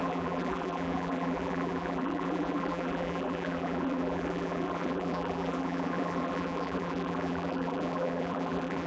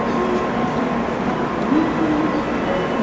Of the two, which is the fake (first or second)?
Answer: first